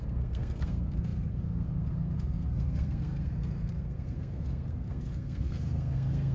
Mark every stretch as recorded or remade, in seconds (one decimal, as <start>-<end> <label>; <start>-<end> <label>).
0.0-6.3 remade